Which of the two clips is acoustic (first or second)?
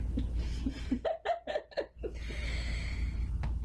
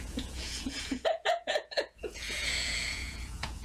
first